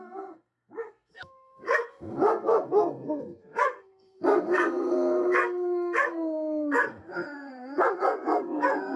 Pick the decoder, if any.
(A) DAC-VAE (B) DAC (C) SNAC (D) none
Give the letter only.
C